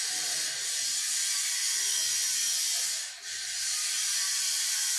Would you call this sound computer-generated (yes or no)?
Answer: no